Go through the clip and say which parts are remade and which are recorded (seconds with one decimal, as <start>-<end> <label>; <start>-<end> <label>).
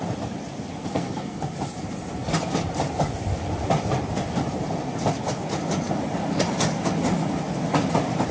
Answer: 0.0-0.7 recorded; 0.7-1.5 remade; 1.5-8.3 recorded